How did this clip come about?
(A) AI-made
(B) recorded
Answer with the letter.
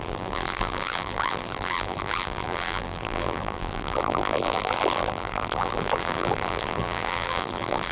A